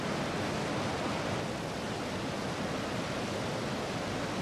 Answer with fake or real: real